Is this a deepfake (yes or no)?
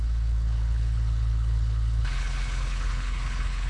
yes